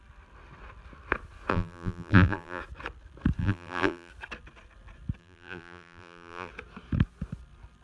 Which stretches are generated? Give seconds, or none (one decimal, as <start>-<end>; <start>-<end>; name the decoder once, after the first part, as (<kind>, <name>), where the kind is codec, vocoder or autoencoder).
1.5-2.6 (vocoder, BigVGAN v2); 3.4-4.1; 5.2-6.5